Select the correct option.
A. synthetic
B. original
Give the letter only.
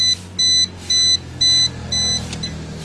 B